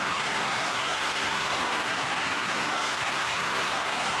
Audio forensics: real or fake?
fake